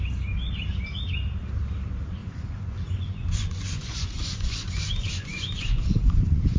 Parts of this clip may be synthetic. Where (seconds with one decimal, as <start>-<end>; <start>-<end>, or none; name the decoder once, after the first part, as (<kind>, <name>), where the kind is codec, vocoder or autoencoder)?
2.2-6.6 (vocoder, Vocos)